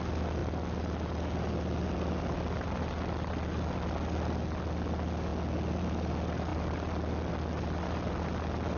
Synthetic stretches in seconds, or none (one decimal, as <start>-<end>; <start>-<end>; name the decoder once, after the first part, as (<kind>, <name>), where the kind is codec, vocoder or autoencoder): none